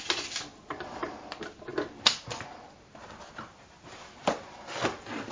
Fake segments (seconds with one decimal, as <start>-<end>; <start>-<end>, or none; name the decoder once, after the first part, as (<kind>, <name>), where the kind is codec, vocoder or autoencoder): none